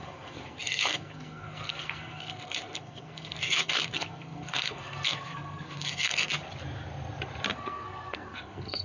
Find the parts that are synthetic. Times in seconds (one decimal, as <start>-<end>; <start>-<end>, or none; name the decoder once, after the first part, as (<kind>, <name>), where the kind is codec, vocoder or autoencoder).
0.0-6.3 (codec, SNAC); 7.5-8.8